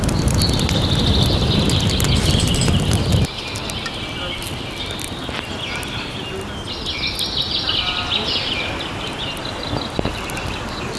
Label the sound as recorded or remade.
recorded